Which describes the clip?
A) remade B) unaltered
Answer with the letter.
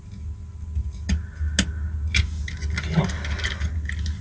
B